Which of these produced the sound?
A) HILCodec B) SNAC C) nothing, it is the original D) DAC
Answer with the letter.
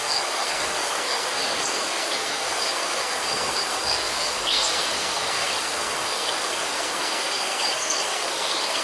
B